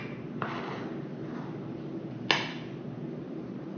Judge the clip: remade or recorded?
recorded